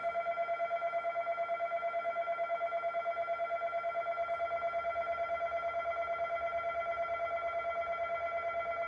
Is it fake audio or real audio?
real